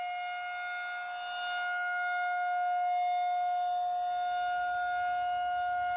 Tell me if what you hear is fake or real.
real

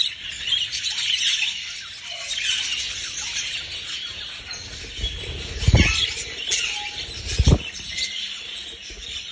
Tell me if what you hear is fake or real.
real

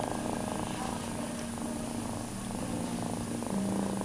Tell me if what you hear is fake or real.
real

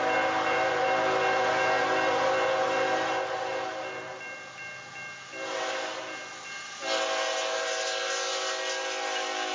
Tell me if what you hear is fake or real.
real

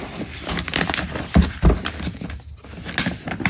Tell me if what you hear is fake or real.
real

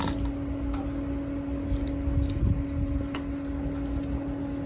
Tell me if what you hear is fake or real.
real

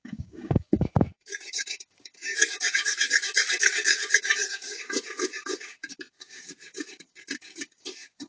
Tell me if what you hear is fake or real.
fake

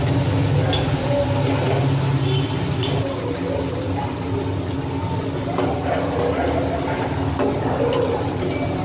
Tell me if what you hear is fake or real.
real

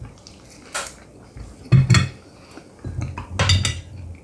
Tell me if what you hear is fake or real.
real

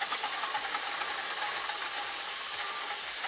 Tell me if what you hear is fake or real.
real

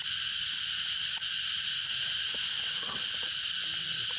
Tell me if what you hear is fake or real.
real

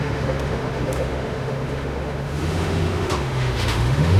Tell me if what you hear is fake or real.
fake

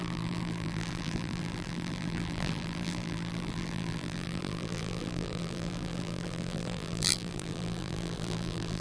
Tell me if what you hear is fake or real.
fake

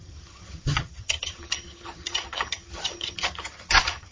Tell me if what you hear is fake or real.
fake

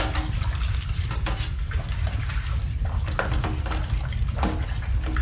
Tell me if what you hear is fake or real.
real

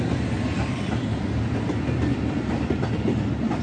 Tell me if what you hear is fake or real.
fake